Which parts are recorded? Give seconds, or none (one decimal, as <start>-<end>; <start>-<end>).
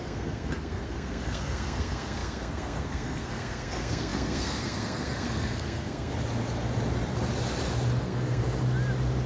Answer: 6.1-8.0; 8.4-9.3